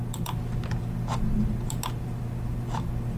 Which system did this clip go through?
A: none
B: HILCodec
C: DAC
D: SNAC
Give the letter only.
A